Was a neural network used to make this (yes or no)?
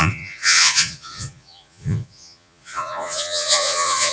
yes